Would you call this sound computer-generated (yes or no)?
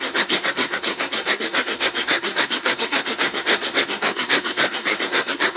yes